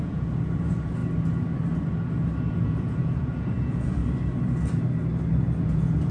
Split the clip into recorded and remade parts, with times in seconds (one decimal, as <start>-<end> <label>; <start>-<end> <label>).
0.0-1.0 remade; 1.0-2.5 recorded; 2.5-4.0 remade; 4.0-5.6 recorded; 5.6-6.1 remade